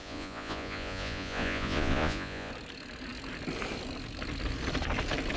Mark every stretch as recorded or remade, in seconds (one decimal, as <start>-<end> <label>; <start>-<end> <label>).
0.0-2.5 remade; 2.5-5.4 recorded

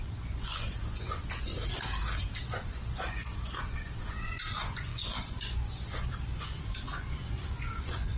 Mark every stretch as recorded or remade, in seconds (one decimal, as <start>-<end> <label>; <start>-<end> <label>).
0.0-1.5 remade; 1.5-2.4 recorded; 2.4-8.2 remade